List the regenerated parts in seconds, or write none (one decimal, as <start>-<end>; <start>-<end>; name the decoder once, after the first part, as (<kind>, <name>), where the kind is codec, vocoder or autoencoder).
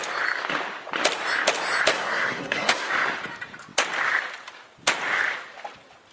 1.9-2.9 (codec, SNAC)